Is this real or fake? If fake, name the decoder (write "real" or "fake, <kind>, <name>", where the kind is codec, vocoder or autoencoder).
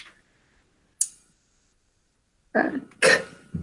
real